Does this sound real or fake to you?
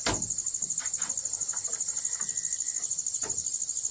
real